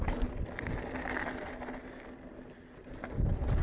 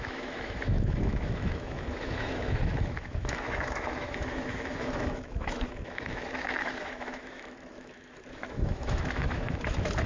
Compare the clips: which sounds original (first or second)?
first